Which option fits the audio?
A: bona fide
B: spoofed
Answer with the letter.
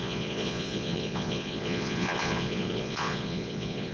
B